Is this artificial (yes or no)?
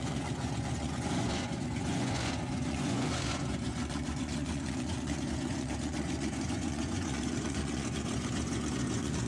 yes